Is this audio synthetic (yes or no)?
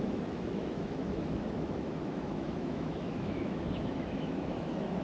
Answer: yes